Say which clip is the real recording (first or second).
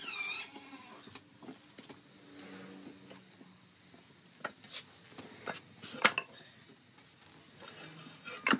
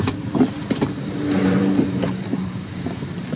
first